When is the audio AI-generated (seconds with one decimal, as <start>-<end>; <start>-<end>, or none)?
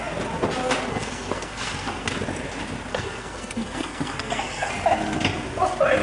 0.9-2.1; 2.9-4.7